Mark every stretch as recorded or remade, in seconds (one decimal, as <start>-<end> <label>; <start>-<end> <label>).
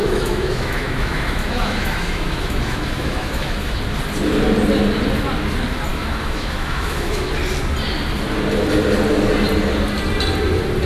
0.0-3.8 remade; 3.8-5.9 recorded; 5.9-7.3 remade; 7.3-10.9 recorded